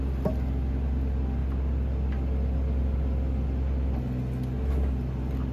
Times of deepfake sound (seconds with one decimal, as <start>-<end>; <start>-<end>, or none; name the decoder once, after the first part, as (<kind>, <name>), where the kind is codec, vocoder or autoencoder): none